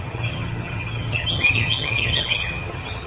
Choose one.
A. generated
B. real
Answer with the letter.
A